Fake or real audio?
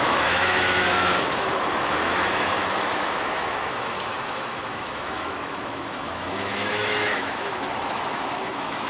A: fake